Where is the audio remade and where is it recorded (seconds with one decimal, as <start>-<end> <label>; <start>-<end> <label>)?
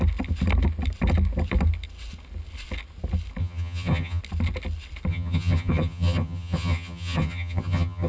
0.0-3.4 recorded; 3.4-4.2 remade; 4.2-5.1 recorded; 5.1-8.1 remade